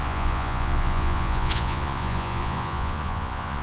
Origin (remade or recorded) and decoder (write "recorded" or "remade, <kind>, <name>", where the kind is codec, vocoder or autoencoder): remade, vocoder, Vocos